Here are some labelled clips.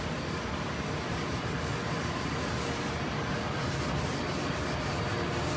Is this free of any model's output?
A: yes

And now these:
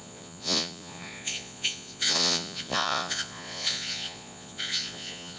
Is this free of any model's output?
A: no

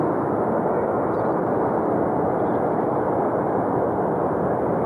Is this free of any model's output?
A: yes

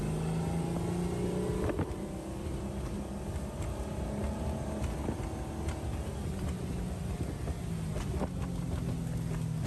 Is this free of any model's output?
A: yes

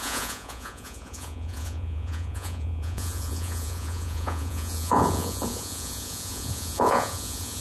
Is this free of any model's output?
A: no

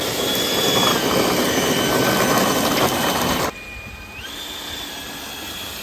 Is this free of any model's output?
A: yes